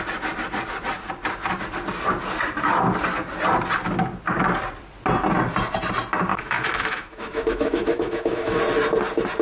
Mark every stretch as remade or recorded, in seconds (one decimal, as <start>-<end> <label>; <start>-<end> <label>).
0.0-6.3 recorded; 6.3-8.6 remade; 8.6-9.4 recorded